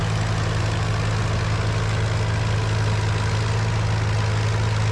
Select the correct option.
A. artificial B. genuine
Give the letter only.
B